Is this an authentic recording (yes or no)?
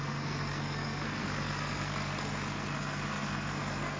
no